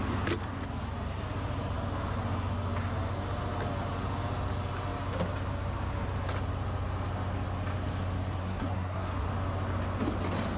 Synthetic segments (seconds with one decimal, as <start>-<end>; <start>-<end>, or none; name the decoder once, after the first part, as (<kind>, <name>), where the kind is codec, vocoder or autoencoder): 8.4-9.3 (codec, SNAC)